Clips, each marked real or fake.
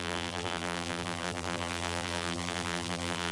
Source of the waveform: fake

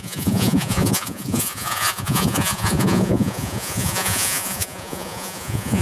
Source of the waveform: fake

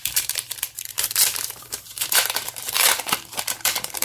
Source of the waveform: fake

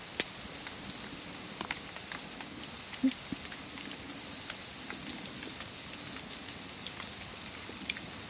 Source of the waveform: real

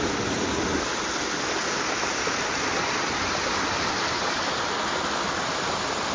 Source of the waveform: real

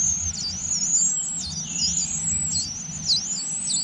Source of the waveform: real